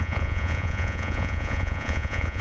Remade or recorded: remade